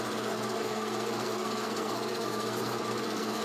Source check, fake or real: fake